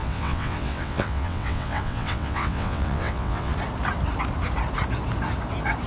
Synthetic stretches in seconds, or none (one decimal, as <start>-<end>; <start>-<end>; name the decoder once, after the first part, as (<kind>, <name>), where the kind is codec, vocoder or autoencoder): 0.0-3.5 (vocoder, WaveNeXt)